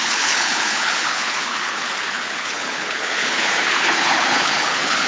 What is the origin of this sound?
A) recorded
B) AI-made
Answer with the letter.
B